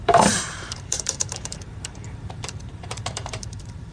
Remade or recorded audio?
remade